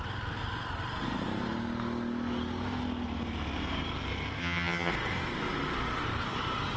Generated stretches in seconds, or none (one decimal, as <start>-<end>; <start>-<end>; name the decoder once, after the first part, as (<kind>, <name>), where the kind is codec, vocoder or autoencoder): 4.4-4.9 (vocoder, HiFi-GAN)